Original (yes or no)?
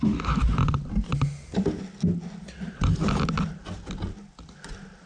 yes